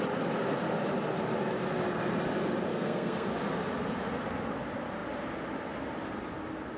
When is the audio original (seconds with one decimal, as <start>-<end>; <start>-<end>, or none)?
0.0-2.7; 3.3-6.8